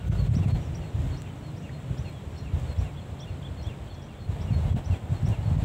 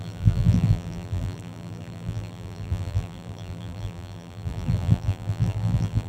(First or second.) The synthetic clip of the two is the second